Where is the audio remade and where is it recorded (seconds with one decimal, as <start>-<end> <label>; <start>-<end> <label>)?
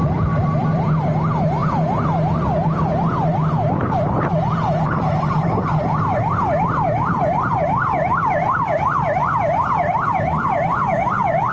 0.0-11.5 recorded